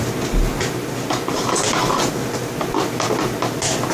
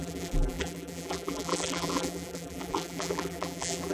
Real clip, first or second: first